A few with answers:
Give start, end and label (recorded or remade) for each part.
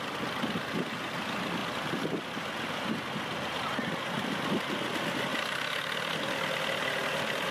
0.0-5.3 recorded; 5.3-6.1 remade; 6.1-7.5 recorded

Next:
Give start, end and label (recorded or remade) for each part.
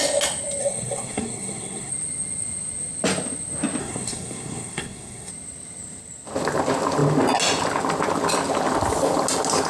0.0-0.6 recorded; 0.6-1.9 remade; 1.9-3.8 recorded; 3.8-5.3 remade; 5.3-9.7 recorded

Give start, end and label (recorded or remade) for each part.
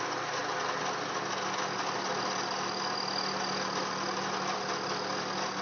0.0-5.6 recorded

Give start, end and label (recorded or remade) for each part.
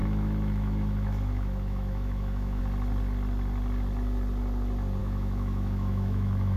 0.0-2.6 remade; 2.6-5.0 recorded; 5.0-6.6 remade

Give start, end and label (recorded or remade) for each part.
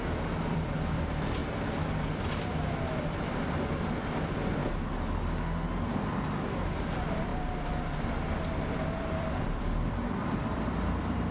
0.0-1.4 remade; 1.4-1.9 recorded; 1.9-4.6 remade; 4.6-6.8 recorded; 6.8-7.3 remade; 7.3-8.7 recorded; 8.7-11.3 remade